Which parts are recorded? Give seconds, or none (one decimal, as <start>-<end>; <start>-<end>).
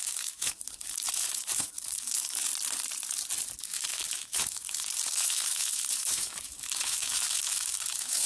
2.5-3.6